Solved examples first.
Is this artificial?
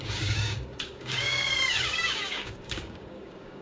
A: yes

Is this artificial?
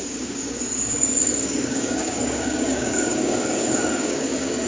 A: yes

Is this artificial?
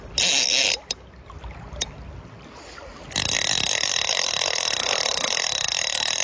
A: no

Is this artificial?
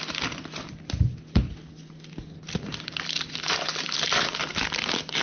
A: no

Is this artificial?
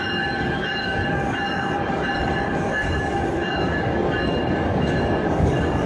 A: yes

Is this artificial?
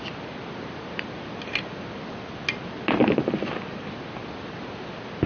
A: no